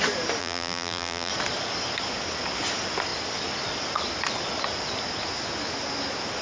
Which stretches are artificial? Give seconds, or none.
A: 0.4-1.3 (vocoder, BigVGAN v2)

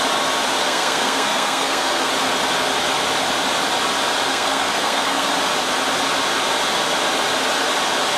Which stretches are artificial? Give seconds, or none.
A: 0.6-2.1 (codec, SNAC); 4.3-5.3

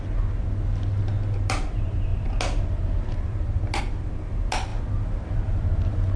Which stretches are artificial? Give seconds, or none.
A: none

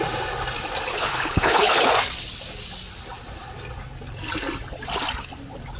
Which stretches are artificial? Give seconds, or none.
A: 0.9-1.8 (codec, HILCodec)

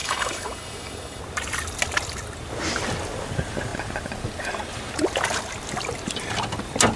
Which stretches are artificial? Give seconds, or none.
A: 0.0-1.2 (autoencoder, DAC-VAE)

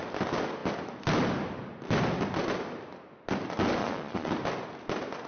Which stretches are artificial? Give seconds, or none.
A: 3.8-4.3 (vocoder, Vocos)

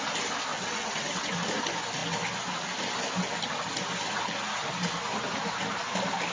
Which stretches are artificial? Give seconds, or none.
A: 0.5-1.3 (vocoder, WaveNeXt)